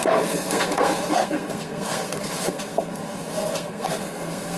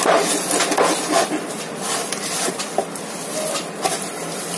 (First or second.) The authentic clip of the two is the second